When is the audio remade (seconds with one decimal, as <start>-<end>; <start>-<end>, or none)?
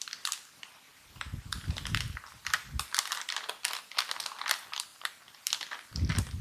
4.9-5.4